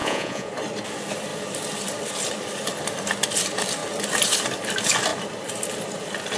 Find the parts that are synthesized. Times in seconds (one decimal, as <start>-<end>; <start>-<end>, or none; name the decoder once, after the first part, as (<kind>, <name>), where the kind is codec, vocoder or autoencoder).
0.0-0.5 (vocoder, Vocos)